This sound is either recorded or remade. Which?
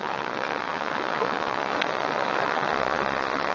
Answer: remade